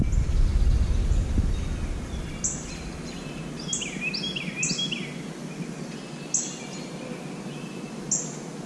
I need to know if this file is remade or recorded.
recorded